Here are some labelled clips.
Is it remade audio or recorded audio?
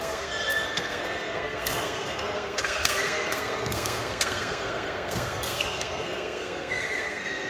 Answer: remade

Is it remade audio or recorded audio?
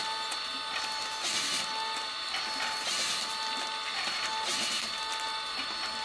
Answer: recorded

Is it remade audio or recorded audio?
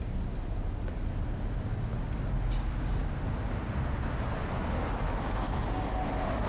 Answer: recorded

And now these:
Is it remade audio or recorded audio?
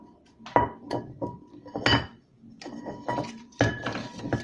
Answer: recorded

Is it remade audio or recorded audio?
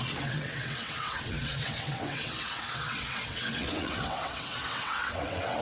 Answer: remade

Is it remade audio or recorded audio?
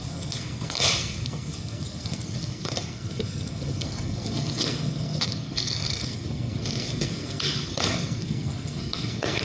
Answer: remade